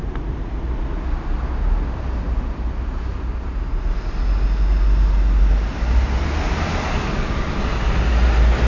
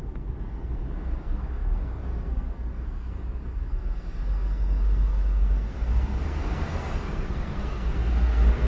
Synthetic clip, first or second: second